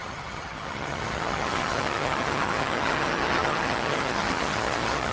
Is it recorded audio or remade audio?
remade